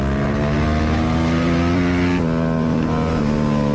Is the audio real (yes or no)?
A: yes